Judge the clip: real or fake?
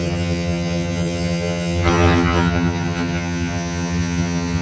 fake